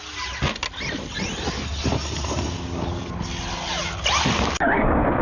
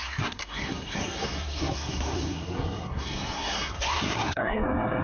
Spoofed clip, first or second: second